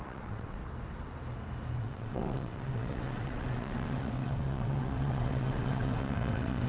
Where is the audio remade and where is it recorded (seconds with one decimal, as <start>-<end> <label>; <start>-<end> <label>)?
0.0-0.6 remade; 0.6-1.8 recorded; 1.8-6.7 remade